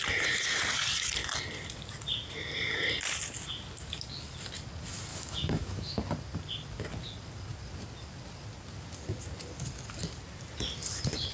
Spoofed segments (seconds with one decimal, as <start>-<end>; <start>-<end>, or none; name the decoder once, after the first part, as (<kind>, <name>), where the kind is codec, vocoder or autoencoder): 5.1-6.0 (codec, DAC)